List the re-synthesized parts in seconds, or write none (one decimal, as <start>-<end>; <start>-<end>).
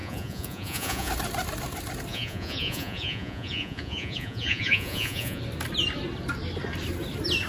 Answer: 0.0-1.1; 2.1-5.4